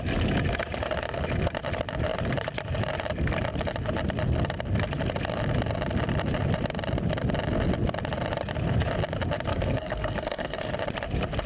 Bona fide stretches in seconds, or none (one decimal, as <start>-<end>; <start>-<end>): 0.0-9.5; 10.7-11.5